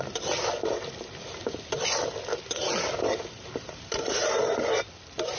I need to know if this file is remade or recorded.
remade